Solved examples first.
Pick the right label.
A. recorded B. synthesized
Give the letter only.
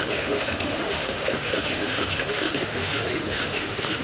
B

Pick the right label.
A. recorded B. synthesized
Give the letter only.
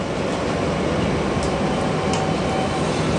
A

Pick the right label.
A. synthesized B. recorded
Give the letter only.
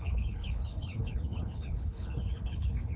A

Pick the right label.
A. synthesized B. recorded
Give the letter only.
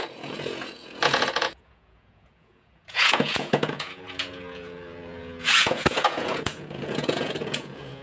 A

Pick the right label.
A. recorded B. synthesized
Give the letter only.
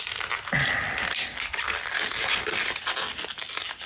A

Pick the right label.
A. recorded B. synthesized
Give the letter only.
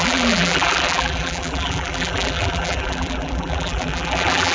B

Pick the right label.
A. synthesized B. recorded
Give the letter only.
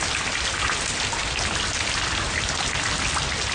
B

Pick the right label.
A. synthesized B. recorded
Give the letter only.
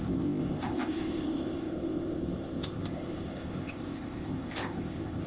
A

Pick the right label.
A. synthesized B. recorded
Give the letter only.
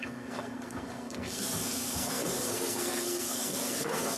A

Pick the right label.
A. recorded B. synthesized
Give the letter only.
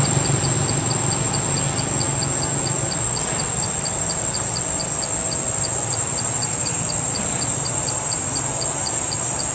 A